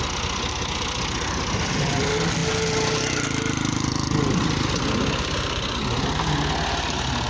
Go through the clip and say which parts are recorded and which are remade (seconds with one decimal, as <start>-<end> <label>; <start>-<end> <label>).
0.0-7.3 recorded